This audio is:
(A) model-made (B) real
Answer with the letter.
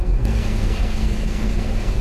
A